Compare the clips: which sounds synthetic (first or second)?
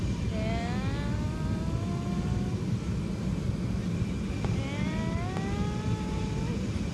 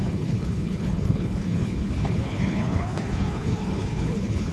second